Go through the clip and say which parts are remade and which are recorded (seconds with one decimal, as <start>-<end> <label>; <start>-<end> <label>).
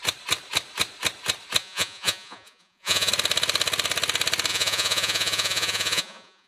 0.0-1.6 recorded; 1.6-3.1 remade; 3.1-4.5 recorded; 4.5-6.5 remade